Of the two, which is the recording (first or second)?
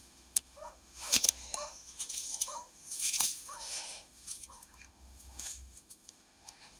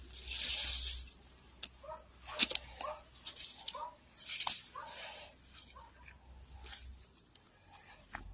second